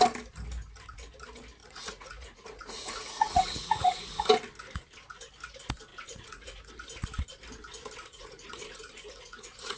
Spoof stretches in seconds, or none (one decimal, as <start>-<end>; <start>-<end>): 1.6-4.2; 5.9-6.7; 8.1-9.8